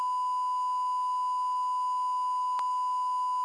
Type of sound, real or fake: real